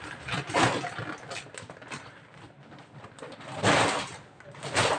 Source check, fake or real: real